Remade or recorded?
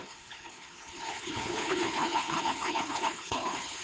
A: remade